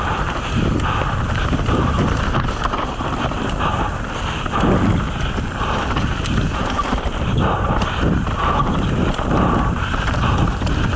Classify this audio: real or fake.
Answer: real